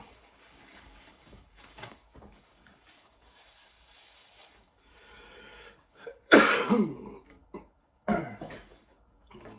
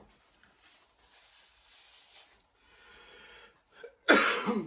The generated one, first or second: first